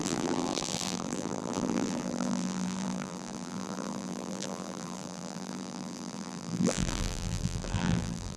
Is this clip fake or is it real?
fake